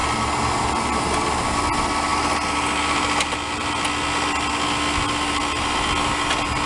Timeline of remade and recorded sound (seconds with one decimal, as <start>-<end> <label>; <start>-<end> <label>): 0.0-6.7 recorded